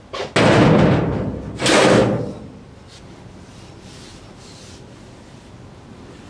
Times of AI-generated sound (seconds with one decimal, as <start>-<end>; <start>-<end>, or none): 2.0-2.7